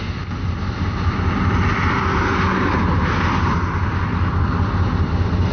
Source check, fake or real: real